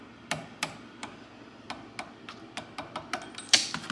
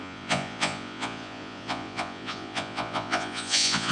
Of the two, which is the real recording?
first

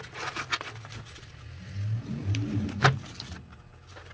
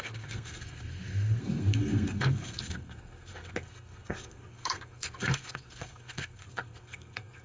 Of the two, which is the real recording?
first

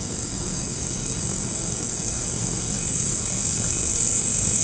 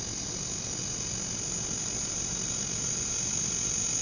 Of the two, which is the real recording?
second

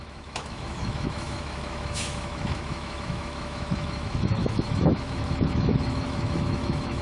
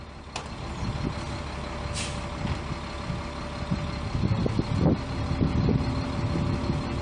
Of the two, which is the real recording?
second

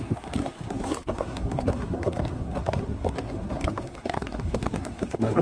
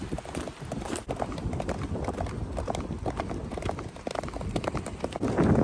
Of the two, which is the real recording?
second